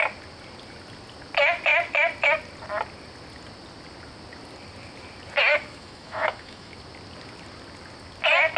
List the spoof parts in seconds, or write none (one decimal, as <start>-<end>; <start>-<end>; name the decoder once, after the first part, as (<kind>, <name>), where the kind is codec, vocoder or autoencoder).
5.5-6.7 (autoencoder, DAC-VAE)